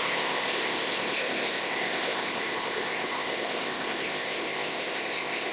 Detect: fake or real fake